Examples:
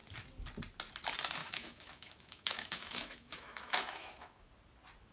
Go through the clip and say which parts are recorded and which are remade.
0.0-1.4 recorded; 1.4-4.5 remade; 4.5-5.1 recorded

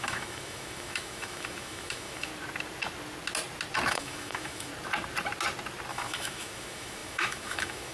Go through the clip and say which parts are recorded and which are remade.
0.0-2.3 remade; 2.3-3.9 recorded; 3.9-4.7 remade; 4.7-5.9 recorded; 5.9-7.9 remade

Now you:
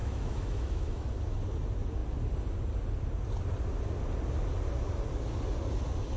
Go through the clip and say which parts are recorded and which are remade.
0.0-1.1 remade; 1.1-6.2 recorded